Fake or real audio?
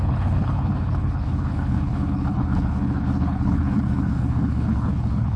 fake